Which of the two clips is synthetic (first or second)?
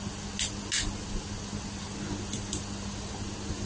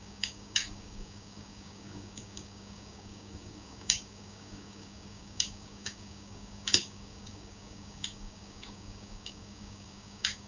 second